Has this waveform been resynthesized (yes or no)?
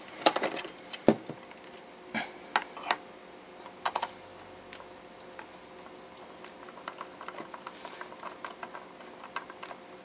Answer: no